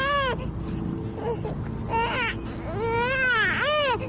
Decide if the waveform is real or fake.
real